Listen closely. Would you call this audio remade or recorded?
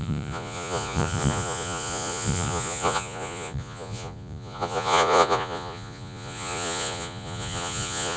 remade